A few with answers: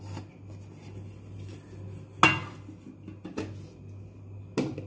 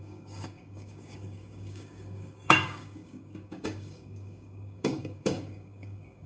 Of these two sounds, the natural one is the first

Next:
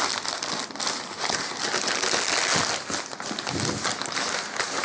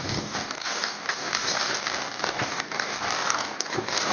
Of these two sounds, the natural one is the first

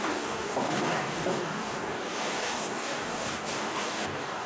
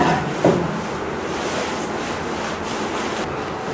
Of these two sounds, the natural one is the second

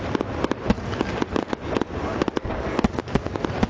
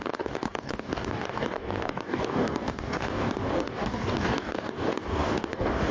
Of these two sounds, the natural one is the first